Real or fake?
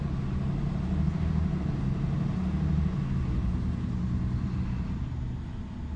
real